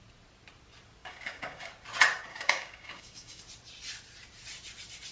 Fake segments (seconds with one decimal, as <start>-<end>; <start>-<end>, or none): 1.0-1.7; 2.3-3.4